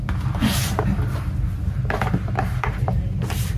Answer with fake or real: fake